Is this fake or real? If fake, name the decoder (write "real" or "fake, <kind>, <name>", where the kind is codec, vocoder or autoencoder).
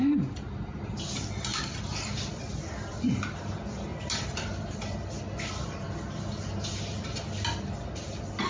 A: real